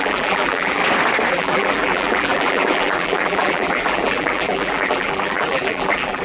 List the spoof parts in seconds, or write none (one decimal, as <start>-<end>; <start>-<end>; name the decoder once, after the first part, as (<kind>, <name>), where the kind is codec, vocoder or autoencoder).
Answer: 0.0-0.8 (vocoder, BigVGAN v2); 1.3-6.2